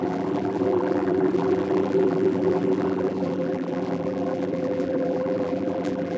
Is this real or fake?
fake